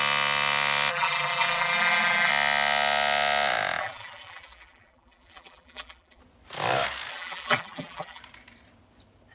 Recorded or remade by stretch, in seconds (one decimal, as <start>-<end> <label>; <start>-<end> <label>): 0.0-0.9 recorded; 0.9-2.3 remade; 2.3-3.8 recorded; 3.8-6.2 remade; 6.2-7.1 recorded; 7.1-8.2 remade; 8.2-9.3 recorded